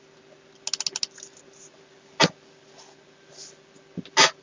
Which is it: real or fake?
real